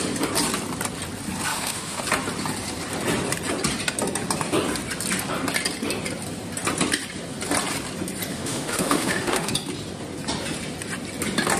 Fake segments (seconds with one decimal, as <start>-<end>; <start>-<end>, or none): 1.5-2.0; 8.3-9.5

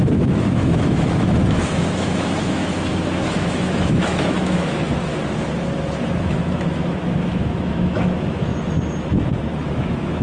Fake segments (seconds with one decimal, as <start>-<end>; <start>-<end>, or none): 0.0-5.1; 6.0-8.5; 9.7-10.2

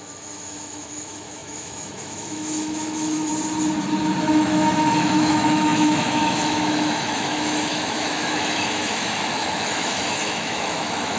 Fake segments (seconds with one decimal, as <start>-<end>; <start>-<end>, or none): 0.0-3.3; 4.2-11.2

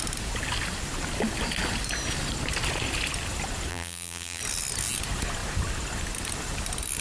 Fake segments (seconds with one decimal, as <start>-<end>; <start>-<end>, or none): 3.7-4.4

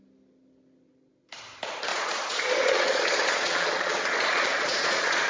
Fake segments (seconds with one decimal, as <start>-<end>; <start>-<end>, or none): 1.9-5.3

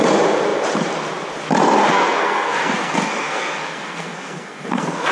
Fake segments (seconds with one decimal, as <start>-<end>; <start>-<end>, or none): 1.9-5.1

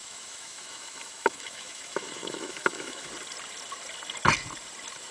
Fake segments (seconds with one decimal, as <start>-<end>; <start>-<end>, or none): 0.0-3.1

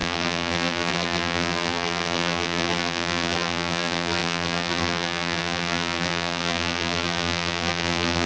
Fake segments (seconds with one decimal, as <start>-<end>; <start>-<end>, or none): 0.0-8.3